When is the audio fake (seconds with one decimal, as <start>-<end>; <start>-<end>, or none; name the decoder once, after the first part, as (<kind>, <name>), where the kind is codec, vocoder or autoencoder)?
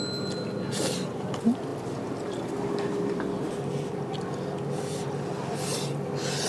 none